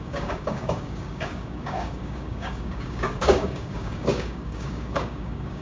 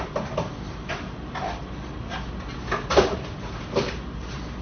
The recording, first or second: second